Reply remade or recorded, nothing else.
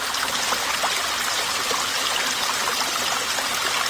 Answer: recorded